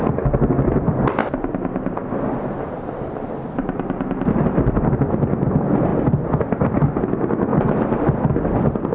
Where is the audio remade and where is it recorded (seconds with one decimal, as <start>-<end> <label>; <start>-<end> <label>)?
0.0-8.9 recorded